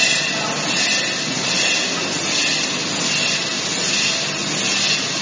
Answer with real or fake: real